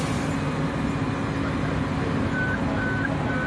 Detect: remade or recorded recorded